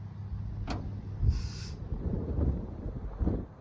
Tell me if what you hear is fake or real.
real